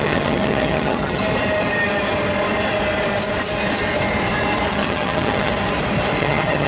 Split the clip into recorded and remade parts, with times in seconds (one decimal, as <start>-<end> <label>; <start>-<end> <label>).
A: 0.0-1.2 remade; 1.2-4.7 recorded; 4.7-5.5 remade; 5.5-6.2 recorded; 6.2-6.7 remade